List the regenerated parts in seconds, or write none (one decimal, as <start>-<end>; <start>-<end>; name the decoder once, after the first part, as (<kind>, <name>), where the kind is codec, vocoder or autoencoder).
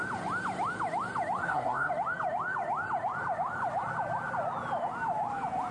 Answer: 1.4-1.9 (codec, SNAC)